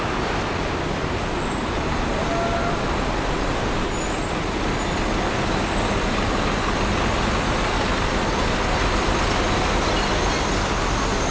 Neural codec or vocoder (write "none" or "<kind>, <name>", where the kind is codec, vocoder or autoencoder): none